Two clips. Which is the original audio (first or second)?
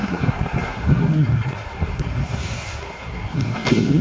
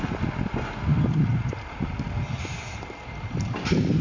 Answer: second